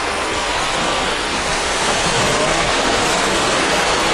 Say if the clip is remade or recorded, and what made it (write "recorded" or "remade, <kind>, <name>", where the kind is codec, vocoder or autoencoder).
remade, codec, SNAC